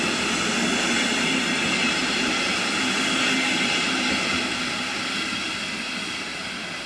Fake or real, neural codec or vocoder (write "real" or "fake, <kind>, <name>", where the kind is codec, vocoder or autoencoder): real